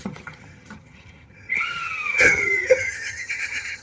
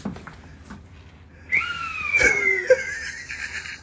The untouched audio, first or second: second